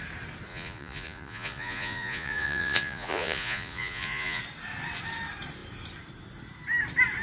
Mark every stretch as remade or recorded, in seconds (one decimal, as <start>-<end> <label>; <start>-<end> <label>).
0.0-0.5 recorded; 0.5-4.4 remade; 4.4-7.2 recorded